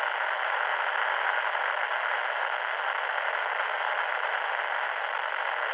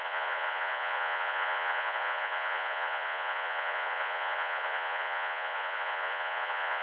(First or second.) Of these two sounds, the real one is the first